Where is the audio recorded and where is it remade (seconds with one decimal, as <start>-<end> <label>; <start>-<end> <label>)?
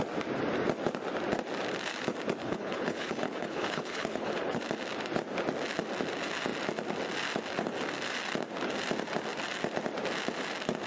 0.0-2.4 recorded; 2.4-4.6 remade; 4.6-10.9 recorded